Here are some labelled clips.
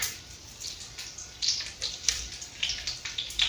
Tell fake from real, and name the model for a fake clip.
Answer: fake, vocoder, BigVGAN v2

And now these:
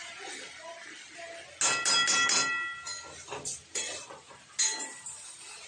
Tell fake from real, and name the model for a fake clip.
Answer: real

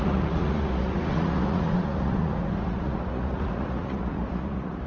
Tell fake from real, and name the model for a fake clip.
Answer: fake, vocoder, Vocos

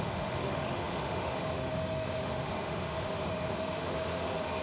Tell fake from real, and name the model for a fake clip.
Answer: fake, autoencoder, DAC-VAE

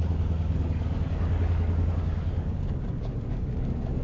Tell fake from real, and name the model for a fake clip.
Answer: fake, codec, DAC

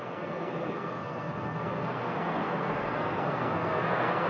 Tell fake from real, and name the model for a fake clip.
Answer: fake, codec, SNAC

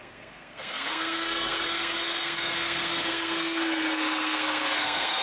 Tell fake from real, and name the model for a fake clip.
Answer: fake, codec, SNAC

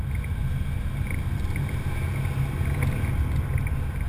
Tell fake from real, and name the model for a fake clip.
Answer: real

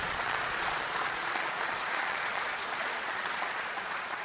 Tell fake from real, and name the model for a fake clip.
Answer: fake, vocoder, Vocos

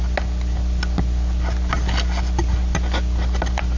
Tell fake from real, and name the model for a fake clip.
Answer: real